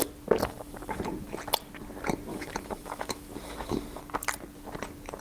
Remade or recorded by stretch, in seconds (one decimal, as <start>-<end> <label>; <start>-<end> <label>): 0.0-0.4 recorded; 0.4-1.0 remade; 1.0-2.3 recorded; 2.3-4.0 remade; 4.0-5.2 recorded